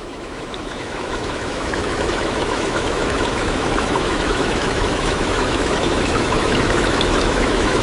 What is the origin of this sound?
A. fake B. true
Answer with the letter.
A